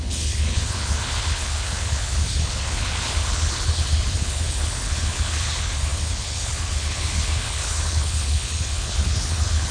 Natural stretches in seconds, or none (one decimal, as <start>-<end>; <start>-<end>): none